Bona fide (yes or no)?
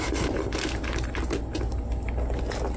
yes